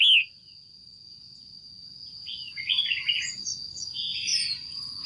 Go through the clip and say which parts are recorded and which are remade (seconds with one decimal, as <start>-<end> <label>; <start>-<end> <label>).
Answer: 0.0-5.1 recorded